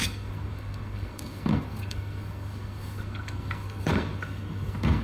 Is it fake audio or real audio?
fake